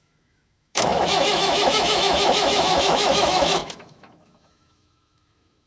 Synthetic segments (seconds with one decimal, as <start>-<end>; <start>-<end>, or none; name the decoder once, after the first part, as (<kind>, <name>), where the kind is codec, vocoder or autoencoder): 0.0-5.7 (autoencoder, DAC-VAE)